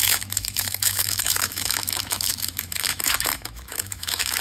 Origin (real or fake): fake